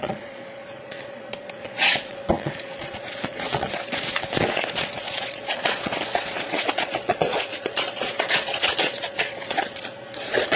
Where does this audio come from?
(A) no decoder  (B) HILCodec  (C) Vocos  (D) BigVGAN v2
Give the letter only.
C